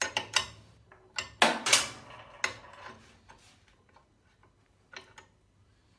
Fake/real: real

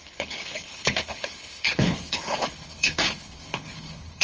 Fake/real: fake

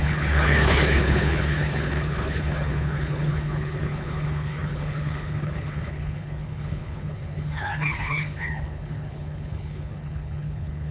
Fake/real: fake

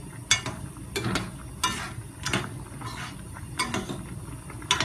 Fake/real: real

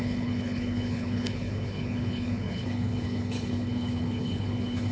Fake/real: fake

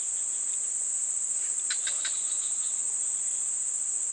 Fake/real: real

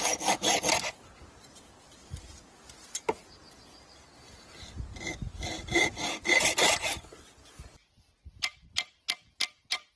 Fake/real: real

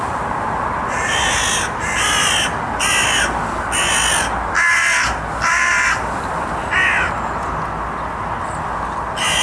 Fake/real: real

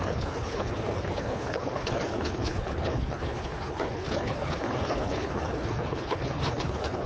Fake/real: fake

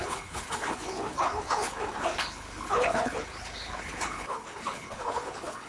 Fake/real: fake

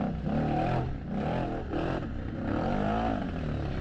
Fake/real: real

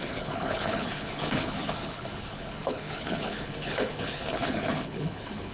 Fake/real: fake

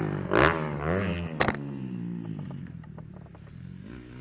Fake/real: real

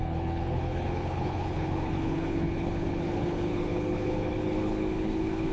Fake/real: fake